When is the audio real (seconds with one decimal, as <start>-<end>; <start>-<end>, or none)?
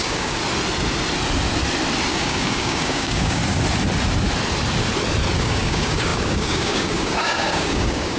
0.4-2.1; 3.4-5.4